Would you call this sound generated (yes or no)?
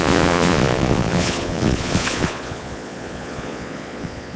yes